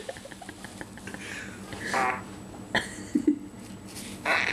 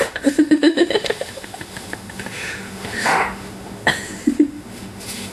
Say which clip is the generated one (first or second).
second